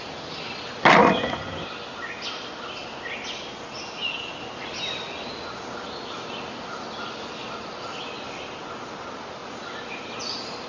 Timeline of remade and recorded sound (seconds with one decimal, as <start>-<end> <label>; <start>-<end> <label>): 0.0-10.7 recorded